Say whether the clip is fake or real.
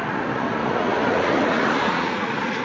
fake